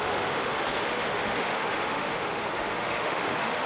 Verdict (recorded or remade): remade